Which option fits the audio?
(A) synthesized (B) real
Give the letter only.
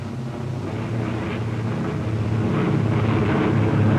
B